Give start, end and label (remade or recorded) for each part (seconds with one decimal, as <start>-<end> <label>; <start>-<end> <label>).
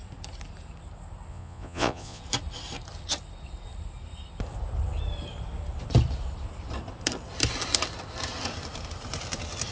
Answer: 0.0-1.3 recorded; 1.3-2.2 remade; 2.2-9.7 recorded